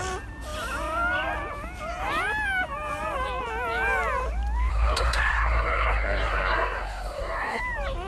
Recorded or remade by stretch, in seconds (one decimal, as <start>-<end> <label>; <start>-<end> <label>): 0.0-4.7 recorded; 4.7-7.6 remade; 7.6-8.1 recorded